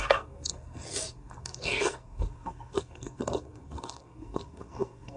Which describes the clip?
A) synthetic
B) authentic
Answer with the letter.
A